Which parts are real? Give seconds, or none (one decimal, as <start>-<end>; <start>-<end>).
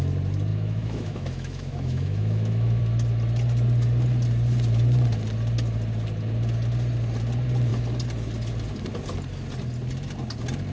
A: 0.0-0.5; 2.8-10.7